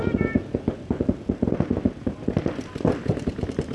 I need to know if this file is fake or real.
real